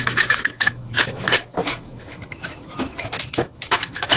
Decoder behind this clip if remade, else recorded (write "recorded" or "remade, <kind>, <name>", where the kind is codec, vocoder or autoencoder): remade, autoencoder, DAC-VAE